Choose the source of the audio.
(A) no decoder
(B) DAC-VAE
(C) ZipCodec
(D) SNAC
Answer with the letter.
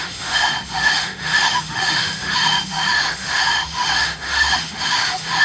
B